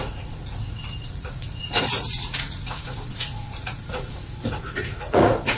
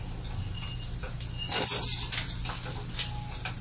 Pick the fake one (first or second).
first